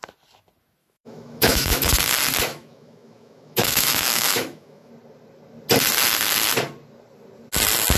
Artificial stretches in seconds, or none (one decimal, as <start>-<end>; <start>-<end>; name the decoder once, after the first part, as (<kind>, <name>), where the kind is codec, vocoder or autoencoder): 0.8-1.9 (autoencoder, DAC-VAE); 2.5-4.9